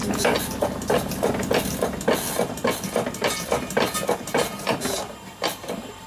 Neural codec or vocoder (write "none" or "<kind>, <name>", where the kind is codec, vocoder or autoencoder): none